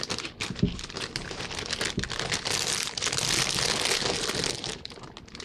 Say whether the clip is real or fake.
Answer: real